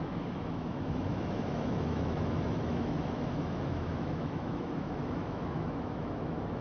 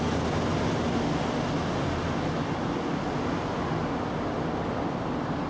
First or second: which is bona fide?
second